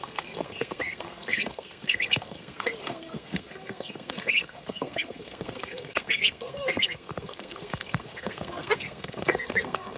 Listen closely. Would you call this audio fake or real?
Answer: fake